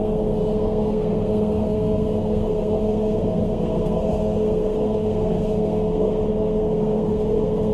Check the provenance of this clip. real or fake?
fake